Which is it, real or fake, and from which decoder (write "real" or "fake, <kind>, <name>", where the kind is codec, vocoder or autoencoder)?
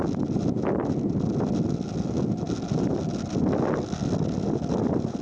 real